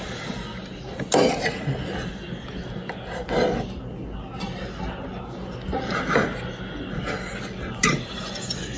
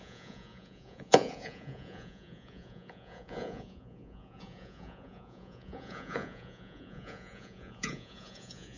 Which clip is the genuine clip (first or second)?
first